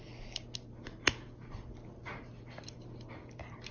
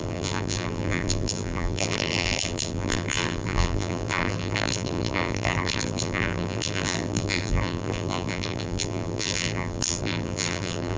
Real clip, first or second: first